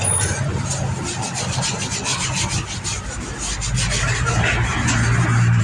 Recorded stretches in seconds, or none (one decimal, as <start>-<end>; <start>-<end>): 0.0-5.6